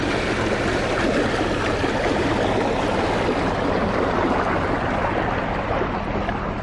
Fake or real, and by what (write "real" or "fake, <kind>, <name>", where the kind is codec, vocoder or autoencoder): real